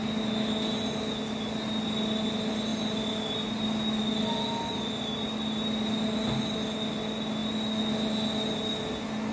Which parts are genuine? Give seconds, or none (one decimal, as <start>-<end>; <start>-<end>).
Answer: 0.0-9.3